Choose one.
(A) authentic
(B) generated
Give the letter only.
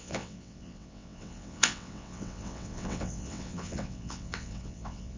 B